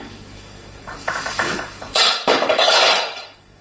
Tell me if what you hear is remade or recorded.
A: remade